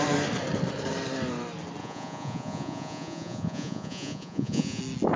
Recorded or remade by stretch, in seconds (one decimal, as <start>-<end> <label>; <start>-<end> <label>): 0.0-1.8 recorded; 1.8-4.8 remade; 4.8-5.2 recorded